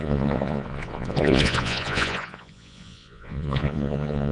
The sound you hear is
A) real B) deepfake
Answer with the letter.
B